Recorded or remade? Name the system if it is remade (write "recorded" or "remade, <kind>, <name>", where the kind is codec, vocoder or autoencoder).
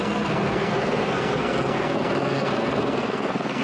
remade, codec, SNAC